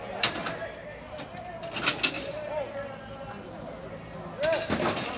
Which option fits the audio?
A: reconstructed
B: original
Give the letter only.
B